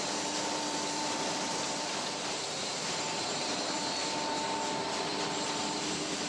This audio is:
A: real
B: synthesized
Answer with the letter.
B